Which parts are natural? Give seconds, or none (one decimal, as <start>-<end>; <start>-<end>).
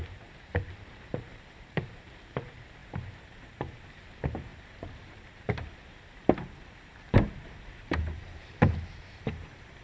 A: none